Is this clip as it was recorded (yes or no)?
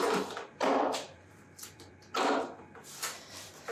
no